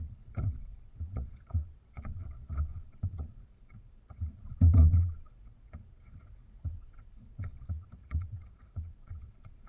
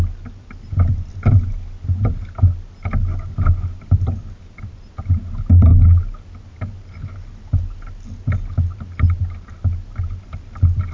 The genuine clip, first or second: second